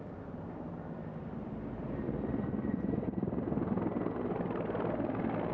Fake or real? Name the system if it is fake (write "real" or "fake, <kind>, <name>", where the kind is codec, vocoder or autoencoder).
fake, vocoder, BigVGAN v2